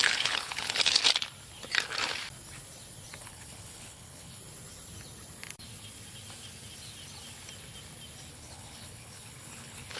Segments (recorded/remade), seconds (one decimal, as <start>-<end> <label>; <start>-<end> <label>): 0.0-1.0 remade; 1.0-3.2 recorded; 3.2-4.4 remade; 4.4-8.3 recorded; 8.3-10.0 remade